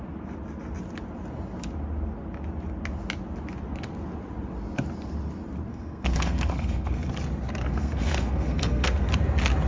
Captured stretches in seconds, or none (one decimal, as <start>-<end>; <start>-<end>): 0.0-5.7; 7.1-7.6; 9.1-9.7